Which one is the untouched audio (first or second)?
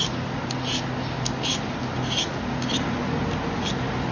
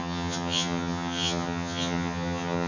first